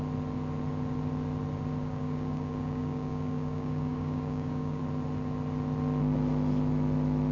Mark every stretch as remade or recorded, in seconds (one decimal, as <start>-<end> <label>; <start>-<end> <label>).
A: 0.0-1.8 recorded; 1.8-4.8 remade; 4.8-7.3 recorded